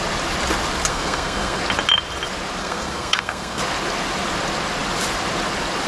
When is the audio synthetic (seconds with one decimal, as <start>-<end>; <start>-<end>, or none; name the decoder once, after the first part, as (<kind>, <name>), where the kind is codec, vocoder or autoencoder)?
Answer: 0.9-1.6 (codec, SNAC); 2.6-3.6